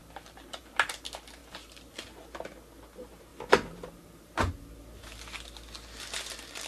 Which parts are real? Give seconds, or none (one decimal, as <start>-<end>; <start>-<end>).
0.6-1.4; 1.9-3.3; 4.5-6.7